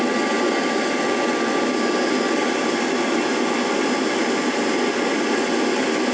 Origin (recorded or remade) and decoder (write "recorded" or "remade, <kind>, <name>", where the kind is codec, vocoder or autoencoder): recorded